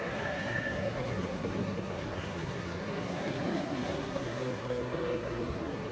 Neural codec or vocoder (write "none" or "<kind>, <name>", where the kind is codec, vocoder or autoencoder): codec, SNAC